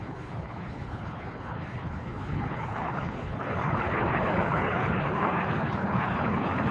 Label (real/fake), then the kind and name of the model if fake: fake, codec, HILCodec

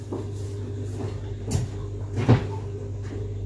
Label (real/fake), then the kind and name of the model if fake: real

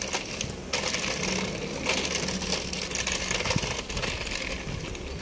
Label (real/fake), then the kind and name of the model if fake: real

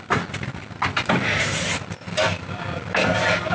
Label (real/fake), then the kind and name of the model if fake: fake, vocoder, BigVGAN v2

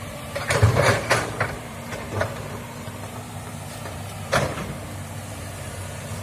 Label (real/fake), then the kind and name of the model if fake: fake, vocoder, BigVGAN v2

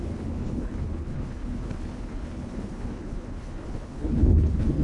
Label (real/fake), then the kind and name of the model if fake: fake, codec, HILCodec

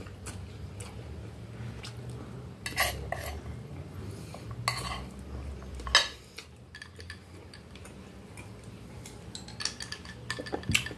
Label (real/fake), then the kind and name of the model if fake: real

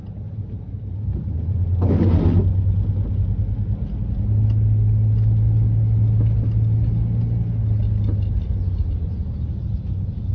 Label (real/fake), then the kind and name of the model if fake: real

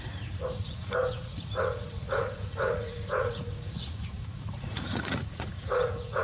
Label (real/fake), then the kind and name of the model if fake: fake, vocoder, Vocos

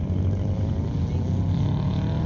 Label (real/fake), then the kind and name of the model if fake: real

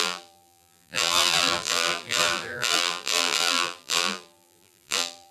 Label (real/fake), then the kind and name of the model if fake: fake, vocoder, BigVGAN v2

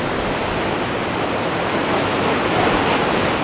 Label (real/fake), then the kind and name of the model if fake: real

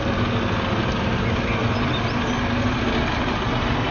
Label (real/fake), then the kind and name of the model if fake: real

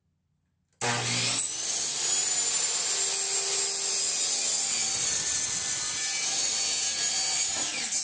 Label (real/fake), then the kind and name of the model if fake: real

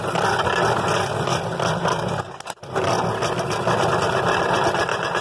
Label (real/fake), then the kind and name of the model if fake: real